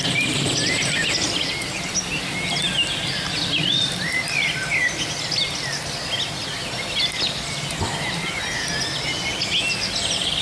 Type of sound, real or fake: real